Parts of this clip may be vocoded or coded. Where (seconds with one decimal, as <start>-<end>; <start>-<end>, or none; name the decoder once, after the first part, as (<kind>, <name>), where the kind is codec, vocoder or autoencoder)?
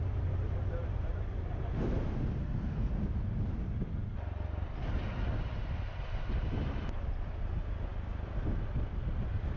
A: 2.4-2.9 (codec, SNAC)